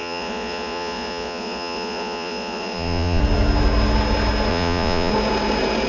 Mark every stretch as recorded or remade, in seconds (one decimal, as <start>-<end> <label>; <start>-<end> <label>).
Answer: 0.0-3.2 remade; 3.2-4.5 recorded; 4.5-5.1 remade; 5.1-5.9 recorded